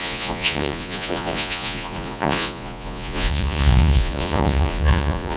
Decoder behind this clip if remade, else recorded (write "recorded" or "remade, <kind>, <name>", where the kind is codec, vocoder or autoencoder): remade, vocoder, Vocos